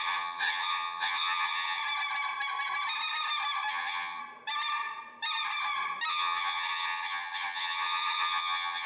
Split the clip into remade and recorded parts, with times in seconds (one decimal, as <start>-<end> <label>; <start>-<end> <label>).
0.0-1.8 remade; 1.8-3.7 recorded; 3.7-4.2 remade; 4.2-6.1 recorded; 6.1-8.9 remade